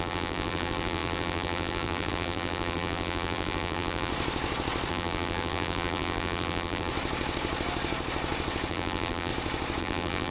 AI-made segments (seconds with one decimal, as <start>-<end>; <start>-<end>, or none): 0.0-4.1; 4.9-6.9; 8.7-9.3; 9.8-10.3